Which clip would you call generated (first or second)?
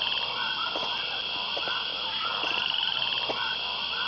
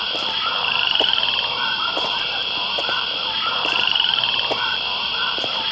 second